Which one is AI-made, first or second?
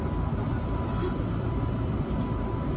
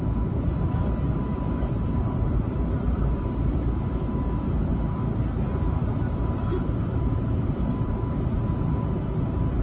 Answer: second